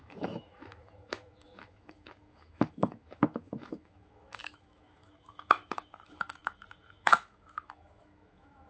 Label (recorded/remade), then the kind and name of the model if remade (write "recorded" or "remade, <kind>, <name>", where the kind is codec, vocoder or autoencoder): remade, autoencoder, DAC-VAE